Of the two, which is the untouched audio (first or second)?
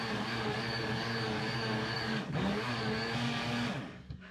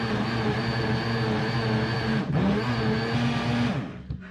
second